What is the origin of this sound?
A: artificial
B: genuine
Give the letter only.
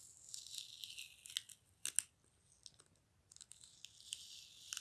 B